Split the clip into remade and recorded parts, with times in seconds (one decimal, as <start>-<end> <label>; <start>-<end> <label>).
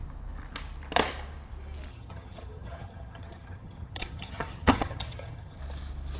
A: 0.0-1.9 recorded; 1.9-5.6 remade; 5.6-6.2 recorded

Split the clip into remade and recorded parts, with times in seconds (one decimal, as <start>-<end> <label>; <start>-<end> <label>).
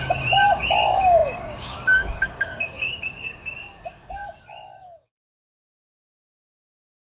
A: 0.0-7.1 remade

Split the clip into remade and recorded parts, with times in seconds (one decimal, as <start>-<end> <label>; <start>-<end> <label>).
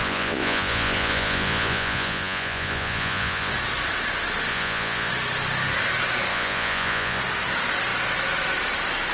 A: 0.0-3.5 remade; 3.5-4.5 recorded; 4.5-5.1 remade; 5.1-6.3 recorded; 6.3-7.2 remade; 7.2-9.1 recorded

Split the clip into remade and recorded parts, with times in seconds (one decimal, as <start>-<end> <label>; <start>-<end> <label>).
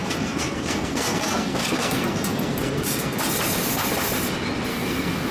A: 0.0-3.2 remade; 3.2-4.7 recorded; 4.7-5.3 remade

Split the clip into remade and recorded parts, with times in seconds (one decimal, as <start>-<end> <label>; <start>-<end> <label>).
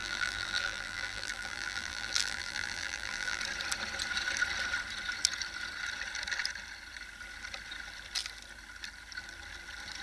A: 0.0-3.4 remade; 3.4-10.0 recorded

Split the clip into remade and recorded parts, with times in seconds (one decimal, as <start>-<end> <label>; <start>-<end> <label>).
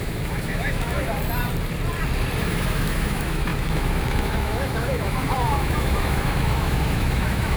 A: 0.0-1.1 remade; 1.1-2.4 recorded; 2.4-7.6 remade